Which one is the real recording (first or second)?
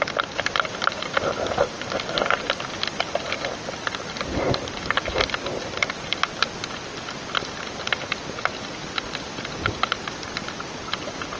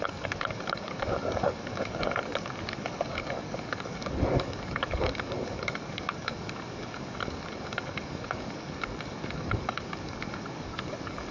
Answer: first